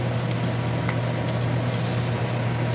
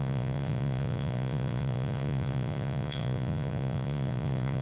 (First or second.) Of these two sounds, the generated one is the second